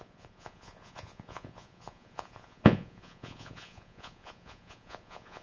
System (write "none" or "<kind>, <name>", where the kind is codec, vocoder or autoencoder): vocoder, Vocos